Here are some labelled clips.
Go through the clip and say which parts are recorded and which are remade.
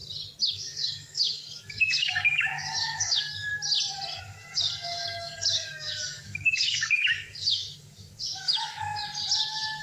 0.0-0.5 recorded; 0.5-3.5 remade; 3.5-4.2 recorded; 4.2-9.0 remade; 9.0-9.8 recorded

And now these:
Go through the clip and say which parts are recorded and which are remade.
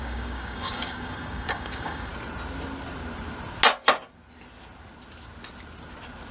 0.0-2.1 remade; 2.1-6.3 recorded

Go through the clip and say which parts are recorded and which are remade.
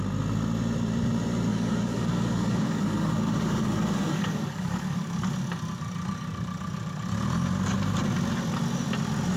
0.0-1.5 recorded; 1.5-5.3 remade; 5.3-9.4 recorded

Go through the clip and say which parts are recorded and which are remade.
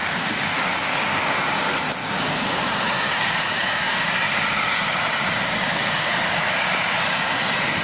0.0-1.2 remade; 1.2-2.0 recorded; 2.0-6.6 remade; 6.6-7.8 recorded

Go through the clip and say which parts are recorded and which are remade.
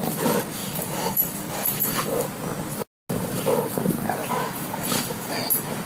0.0-0.6 recorded; 0.6-2.3 remade; 2.3-4.2 recorded; 4.2-5.3 remade; 5.3-5.9 recorded